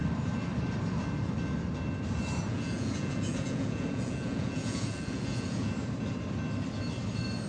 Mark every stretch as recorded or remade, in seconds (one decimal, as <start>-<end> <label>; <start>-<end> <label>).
0.0-2.5 recorded; 2.5-5.7 remade; 5.7-7.5 recorded